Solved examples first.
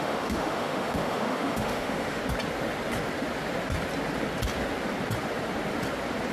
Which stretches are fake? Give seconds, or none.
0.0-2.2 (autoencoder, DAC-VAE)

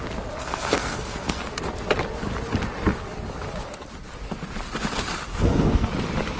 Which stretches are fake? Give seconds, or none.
0.4-1.5 (codec, SNAC); 5.3-5.9